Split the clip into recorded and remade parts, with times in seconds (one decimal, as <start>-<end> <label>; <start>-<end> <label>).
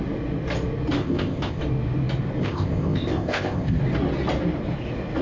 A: 0.0-1.0 recorded; 1.0-1.6 remade; 1.6-2.4 recorded; 2.4-3.8 remade; 3.8-5.2 recorded